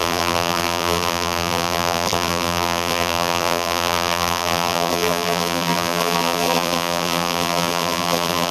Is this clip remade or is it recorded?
remade